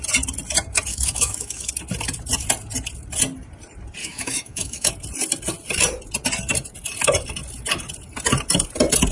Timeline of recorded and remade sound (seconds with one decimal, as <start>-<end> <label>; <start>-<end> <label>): 0.0-0.9 recorded; 0.9-1.7 remade; 1.7-4.0 recorded; 4.0-4.9 remade; 4.9-9.1 recorded